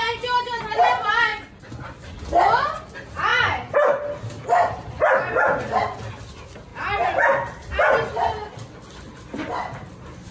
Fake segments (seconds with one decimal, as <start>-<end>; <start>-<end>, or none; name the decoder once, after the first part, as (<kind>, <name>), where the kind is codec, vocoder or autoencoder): none